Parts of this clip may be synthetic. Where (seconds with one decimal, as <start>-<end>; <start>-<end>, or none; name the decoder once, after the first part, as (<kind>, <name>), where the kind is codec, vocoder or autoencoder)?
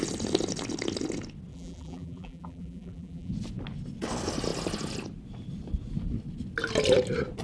1.5-3.3 (vocoder, BigVGAN v2)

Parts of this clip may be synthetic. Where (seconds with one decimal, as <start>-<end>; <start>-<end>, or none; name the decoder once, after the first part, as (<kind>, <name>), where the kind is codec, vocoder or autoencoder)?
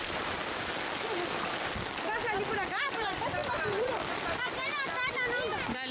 0.0-0.4 (vocoder, BigVGAN v2); 2.8-4.7